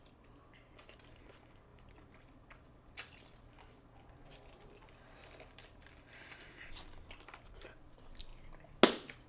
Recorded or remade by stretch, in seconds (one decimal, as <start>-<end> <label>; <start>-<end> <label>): 0.0-8.3 remade; 8.3-9.3 recorded